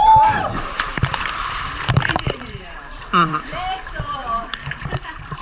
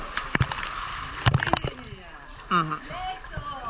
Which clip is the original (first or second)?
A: second